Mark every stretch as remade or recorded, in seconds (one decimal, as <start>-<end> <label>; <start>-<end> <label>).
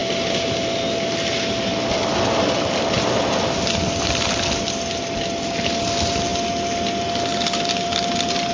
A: 0.0-8.5 recorded